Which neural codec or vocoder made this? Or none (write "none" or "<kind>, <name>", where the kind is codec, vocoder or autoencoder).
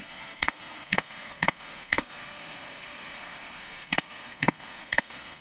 codec, SNAC